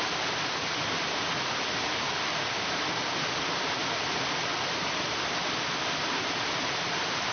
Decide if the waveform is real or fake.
real